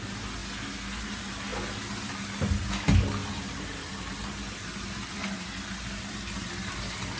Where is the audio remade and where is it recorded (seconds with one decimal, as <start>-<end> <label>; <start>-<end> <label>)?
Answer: 0.0-7.2 recorded